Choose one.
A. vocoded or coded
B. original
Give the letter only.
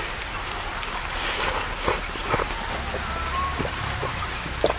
B